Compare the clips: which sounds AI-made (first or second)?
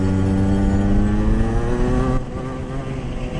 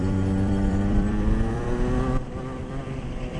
second